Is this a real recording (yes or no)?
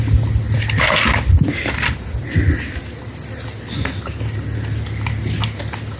yes